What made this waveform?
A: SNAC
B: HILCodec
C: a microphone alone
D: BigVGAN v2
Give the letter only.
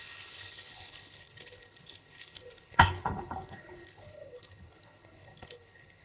B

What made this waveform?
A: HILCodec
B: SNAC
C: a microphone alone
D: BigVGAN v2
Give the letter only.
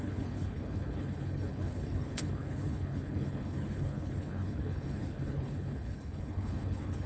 A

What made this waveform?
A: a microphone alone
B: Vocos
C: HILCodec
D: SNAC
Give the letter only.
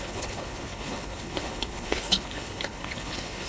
C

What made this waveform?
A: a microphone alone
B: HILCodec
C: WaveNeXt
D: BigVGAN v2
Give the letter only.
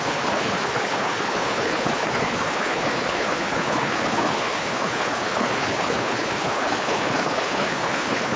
B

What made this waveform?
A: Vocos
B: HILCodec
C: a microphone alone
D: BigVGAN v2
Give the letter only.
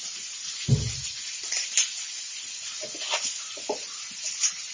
C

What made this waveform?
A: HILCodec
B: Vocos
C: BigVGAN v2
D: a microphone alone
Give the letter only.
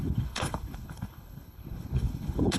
A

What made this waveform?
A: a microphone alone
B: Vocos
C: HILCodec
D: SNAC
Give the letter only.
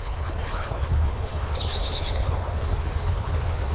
C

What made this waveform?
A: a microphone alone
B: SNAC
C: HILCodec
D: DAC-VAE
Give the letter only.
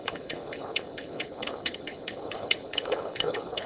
C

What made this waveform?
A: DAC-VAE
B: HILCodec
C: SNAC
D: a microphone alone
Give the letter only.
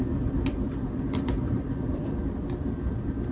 D